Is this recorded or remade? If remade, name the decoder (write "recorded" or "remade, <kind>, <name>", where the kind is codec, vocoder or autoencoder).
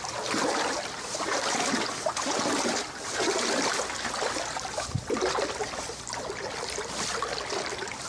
recorded